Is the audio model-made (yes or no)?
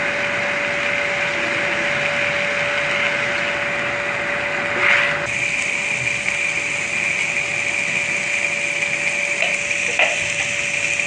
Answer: no